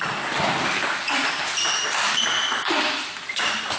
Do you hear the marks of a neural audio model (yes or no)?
no